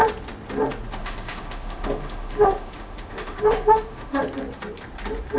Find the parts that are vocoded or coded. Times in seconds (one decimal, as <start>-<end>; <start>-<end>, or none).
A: 1.0-4.2